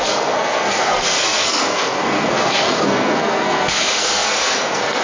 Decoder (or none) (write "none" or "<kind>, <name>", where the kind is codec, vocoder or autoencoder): codec, SNAC